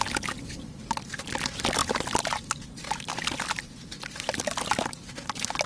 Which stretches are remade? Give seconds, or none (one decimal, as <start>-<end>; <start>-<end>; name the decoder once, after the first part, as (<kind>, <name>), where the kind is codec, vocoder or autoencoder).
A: none